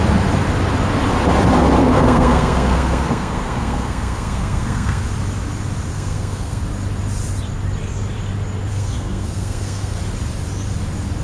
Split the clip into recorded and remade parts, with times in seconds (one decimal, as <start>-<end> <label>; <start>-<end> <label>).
0.0-1.8 recorded; 1.8-5.0 remade; 5.0-5.9 recorded; 5.9-6.6 remade; 6.6-8.7 recorded; 8.7-10.0 remade; 10.0-11.2 recorded